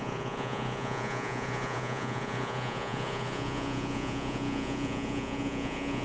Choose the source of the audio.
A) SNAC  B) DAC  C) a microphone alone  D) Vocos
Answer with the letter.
D